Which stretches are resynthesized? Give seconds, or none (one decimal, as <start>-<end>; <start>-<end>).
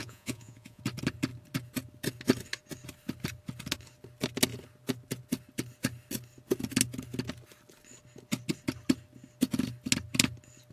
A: 0.0-0.8